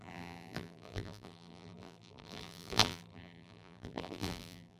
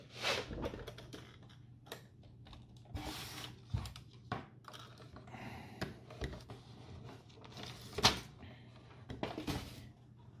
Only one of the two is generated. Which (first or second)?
first